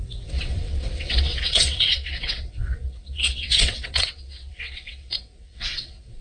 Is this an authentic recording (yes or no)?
no